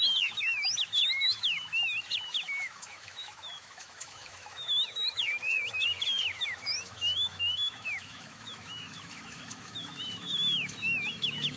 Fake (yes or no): yes